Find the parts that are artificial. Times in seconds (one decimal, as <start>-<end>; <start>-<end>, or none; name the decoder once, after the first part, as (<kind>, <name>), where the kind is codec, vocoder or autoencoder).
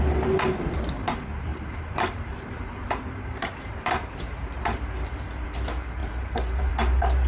1.5-4.8 (vocoder, BigVGAN v2); 6.0-6.7